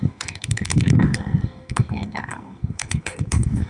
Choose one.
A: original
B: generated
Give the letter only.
B